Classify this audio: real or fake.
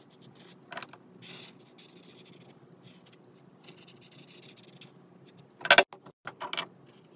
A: real